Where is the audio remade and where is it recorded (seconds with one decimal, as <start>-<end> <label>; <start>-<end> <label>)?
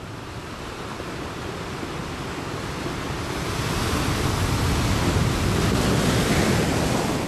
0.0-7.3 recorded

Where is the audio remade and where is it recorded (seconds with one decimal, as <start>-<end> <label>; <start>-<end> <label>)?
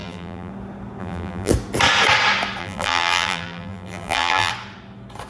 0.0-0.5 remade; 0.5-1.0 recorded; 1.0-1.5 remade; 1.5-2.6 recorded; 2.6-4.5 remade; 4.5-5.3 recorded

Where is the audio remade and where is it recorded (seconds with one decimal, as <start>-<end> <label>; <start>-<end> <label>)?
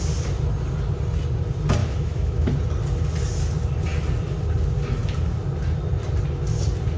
0.0-1.8 recorded; 1.8-2.5 remade; 2.5-7.0 recorded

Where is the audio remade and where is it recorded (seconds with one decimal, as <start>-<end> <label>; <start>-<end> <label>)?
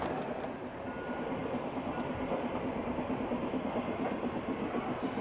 0.0-5.2 recorded